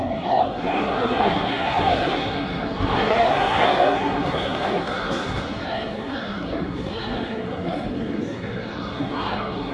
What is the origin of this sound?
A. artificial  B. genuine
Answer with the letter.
A